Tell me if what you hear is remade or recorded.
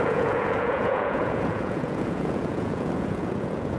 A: remade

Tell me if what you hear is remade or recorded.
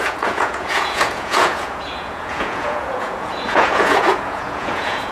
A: remade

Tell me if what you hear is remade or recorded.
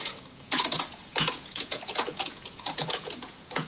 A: remade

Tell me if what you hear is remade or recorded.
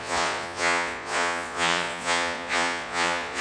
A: remade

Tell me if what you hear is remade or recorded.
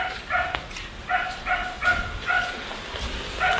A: recorded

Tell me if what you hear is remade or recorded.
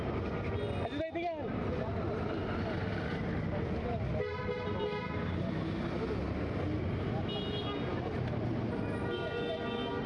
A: recorded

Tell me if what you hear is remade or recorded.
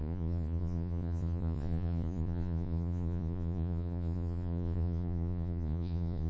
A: remade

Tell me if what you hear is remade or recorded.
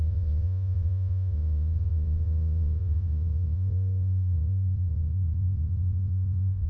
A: remade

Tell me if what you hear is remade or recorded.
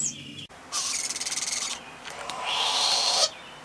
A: recorded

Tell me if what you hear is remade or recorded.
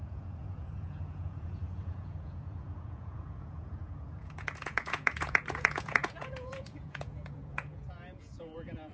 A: remade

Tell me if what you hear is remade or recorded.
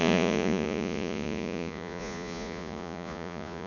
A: remade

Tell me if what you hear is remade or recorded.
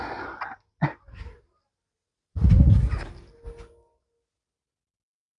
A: recorded